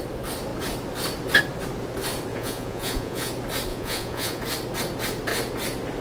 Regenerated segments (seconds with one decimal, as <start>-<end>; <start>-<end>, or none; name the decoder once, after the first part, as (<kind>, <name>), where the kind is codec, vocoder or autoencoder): 2.3-3.3 (vocoder, Vocos); 3.7-4.4